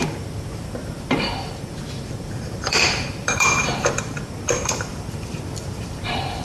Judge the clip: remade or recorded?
remade